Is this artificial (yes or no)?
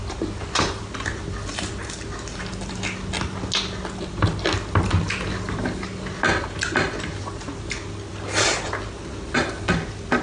no